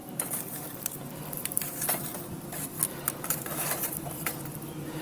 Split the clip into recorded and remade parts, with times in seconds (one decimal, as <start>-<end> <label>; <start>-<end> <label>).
0.0-5.0 recorded